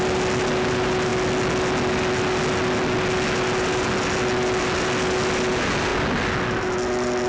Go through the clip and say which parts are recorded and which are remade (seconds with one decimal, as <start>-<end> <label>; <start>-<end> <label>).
0.0-7.3 recorded